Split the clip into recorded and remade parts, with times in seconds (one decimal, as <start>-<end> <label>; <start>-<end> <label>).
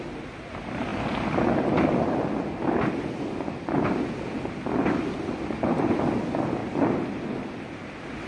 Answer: 0.0-8.3 recorded